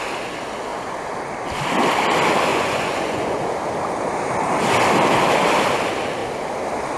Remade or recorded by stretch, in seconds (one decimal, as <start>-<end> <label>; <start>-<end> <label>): 0.0-2.5 recorded; 2.5-3.5 remade; 3.5-7.0 recorded

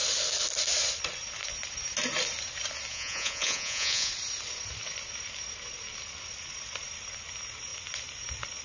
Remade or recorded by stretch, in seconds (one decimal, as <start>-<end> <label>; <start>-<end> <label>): 0.0-2.9 recorded; 2.9-4.1 remade; 4.1-8.6 recorded

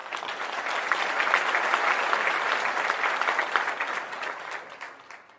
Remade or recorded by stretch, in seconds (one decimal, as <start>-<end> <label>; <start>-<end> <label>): 0.0-5.4 recorded

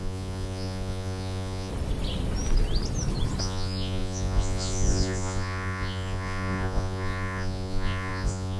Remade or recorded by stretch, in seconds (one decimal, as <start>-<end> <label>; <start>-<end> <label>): 0.0-1.7 remade; 1.7-3.4 recorded; 3.4-8.6 remade

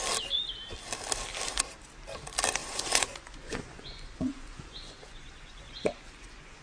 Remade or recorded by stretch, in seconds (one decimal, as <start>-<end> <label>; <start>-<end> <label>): 0.0-2.6 recorded; 2.6-6.6 remade